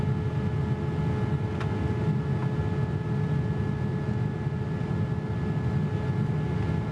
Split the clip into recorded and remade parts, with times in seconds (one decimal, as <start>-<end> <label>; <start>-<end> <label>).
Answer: 0.0-6.9 recorded